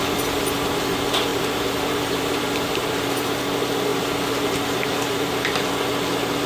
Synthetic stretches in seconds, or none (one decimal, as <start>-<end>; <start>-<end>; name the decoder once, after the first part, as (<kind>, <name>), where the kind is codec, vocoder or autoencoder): 1.3-3.4 (vocoder, BigVGAN v2); 3.9-5.7